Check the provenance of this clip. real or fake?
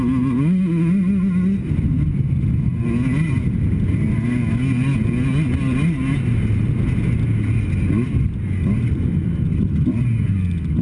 real